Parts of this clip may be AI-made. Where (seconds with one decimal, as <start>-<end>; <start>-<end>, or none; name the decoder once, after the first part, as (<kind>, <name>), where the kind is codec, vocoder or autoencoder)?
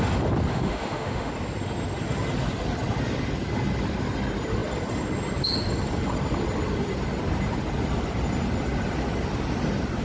0.5-1.3 (autoencoder, DAC-VAE)